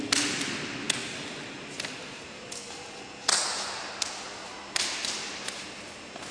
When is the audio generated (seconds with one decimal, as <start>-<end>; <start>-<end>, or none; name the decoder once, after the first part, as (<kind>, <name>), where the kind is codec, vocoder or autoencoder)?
1.0-2.6 (vocoder, BigVGAN v2)